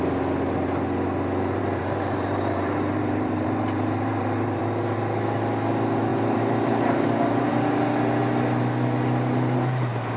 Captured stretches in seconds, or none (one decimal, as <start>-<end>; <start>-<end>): 0.0-1.6; 4.6-6.1; 7.5-10.2